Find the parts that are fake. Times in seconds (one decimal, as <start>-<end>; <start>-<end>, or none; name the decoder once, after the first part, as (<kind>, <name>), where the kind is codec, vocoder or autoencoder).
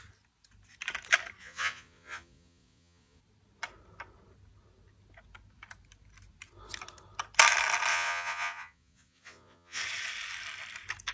1.4-3.2 (vocoder, Vocos); 7.9-9.8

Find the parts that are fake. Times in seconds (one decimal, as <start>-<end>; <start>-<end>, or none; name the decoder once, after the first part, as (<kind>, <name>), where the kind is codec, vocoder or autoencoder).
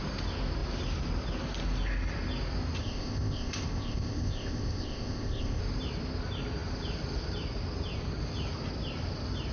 2.8-5.6 (codec, ZipCodec)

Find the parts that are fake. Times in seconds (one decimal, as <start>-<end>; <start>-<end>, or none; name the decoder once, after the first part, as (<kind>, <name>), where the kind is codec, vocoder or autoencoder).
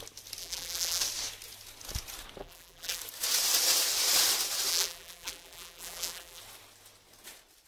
0.4-1.0 (vocoder, BigVGAN v2); 2.4-3.0; 4.7-6.4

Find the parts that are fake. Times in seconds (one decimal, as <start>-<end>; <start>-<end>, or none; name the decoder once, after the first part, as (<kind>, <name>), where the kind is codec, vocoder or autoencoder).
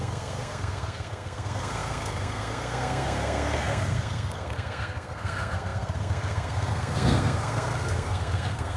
0.0-8.8 (codec, SNAC)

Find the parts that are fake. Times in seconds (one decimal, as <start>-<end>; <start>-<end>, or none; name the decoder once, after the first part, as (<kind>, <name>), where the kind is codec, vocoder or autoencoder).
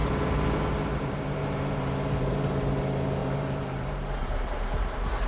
0.0-2.7 (vocoder, BigVGAN v2); 3.2-5.3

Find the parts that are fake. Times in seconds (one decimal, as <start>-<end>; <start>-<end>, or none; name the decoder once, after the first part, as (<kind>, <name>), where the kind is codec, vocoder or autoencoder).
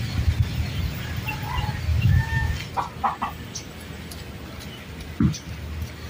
1.9-2.5 (autoencoder, DAC-VAE)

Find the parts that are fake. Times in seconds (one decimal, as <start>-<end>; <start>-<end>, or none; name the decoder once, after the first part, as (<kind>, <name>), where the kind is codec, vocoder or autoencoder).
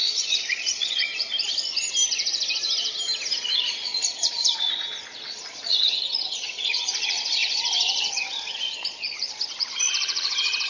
0.0-1.1 (vocoder, Vocos); 3.3-10.7